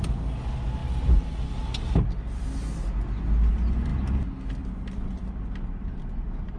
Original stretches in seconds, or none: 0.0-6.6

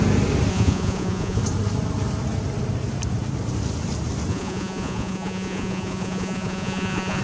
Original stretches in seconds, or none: 0.0-0.5; 1.4-4.3

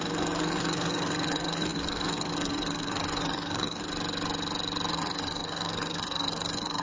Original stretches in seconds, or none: 3.9-4.9

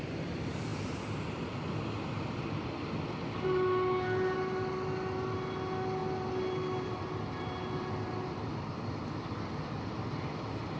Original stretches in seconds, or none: 0.0-10.8

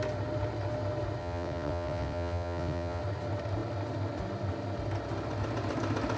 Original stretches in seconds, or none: 0.0-1.2; 3.0-6.2

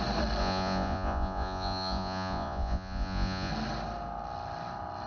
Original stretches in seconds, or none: 0.0-0.4; 3.5-5.1

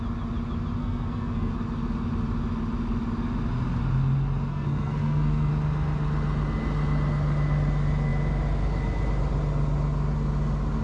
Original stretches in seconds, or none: 0.0-0.8; 1.5-4.5; 5.5-10.8

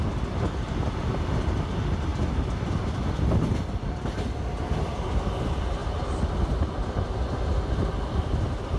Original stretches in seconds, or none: 0.0-8.8